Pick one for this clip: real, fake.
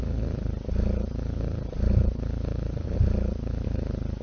real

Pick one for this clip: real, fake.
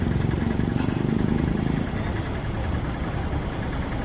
real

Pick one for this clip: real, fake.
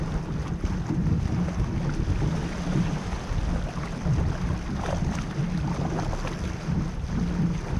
real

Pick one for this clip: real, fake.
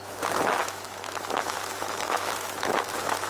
fake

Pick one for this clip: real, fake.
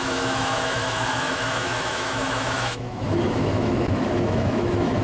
fake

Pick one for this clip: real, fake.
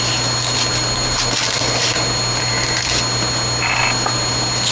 real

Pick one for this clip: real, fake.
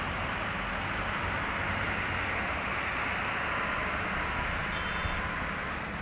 real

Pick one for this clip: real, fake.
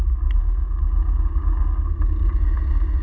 real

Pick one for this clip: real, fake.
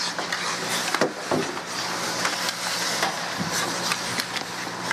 real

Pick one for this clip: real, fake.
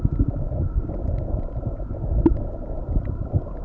real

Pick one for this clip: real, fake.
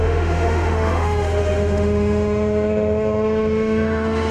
fake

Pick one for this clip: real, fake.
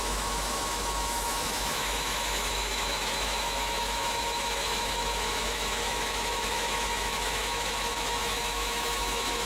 fake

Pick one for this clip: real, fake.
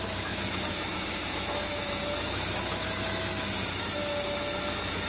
fake